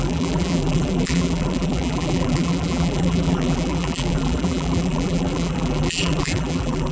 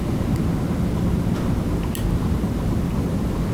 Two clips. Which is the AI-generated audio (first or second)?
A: first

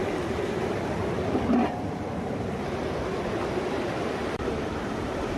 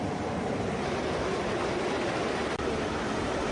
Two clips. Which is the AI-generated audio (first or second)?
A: first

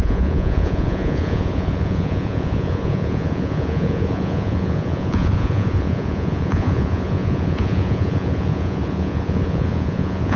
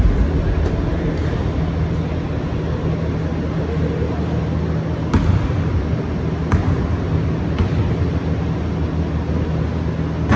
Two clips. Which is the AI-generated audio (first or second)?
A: first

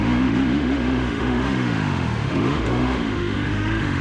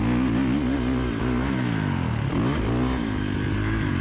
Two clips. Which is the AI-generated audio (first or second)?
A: first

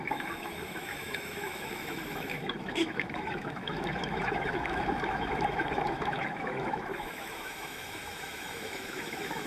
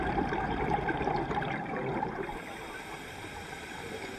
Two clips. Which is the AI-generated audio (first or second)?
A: first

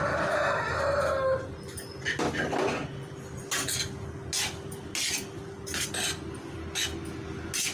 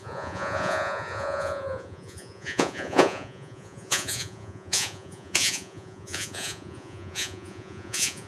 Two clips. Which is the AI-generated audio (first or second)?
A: second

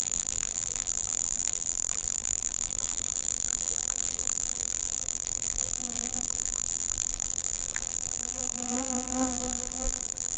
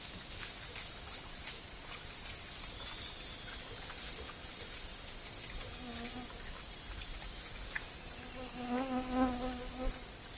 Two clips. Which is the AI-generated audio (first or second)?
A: first